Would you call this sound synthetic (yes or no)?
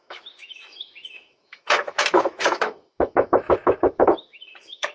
yes